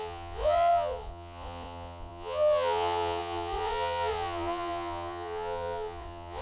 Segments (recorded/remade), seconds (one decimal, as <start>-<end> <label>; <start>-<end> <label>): 0.0-6.4 remade